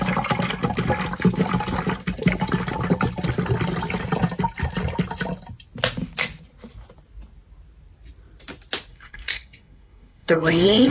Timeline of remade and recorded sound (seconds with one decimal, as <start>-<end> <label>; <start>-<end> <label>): 0.0-8.9 recorded; 8.9-10.9 remade